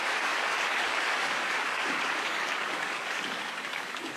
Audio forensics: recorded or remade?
remade